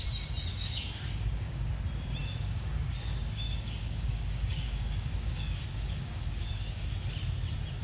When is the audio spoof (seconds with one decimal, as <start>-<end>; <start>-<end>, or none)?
0.5-1.7; 2.2-6.9